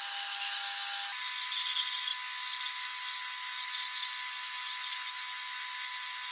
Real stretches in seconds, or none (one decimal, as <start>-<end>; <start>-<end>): 0.0-6.3